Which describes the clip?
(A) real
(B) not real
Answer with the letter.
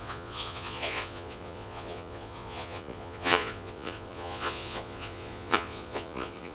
B